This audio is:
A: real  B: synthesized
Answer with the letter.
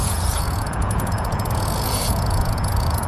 B